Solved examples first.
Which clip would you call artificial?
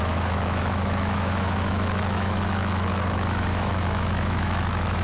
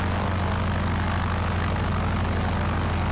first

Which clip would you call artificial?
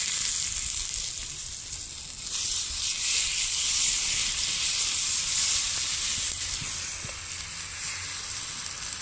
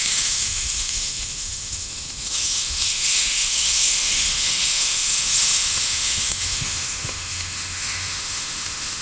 second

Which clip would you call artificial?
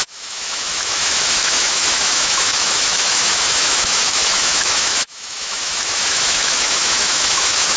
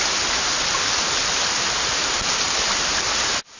first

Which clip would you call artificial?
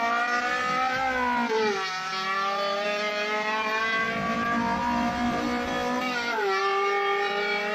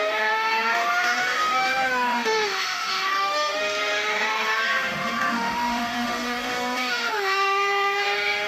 second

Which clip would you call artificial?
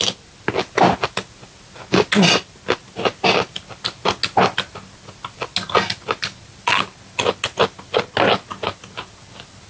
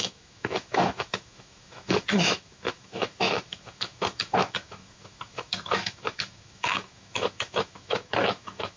second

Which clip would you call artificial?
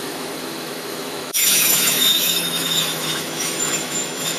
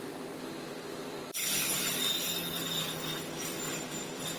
first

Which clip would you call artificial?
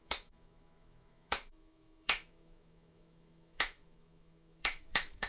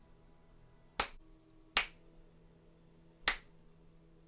first